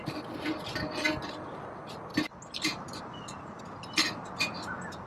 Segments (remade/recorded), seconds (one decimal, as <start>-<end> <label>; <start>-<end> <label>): 0.0-2.1 recorded; 2.1-3.6 remade; 3.6-5.1 recorded